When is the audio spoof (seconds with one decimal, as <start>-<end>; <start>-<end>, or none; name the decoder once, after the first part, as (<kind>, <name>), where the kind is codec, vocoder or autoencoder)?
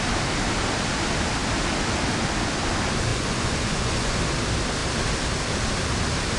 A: 3.1-4.2 (vocoder, Vocos)